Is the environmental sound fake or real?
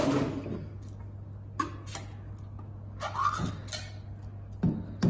real